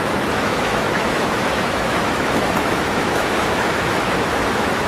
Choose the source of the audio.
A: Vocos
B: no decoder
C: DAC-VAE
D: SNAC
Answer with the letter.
C